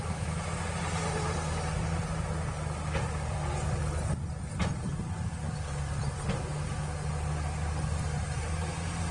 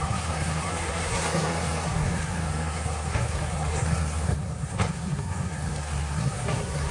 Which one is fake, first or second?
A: second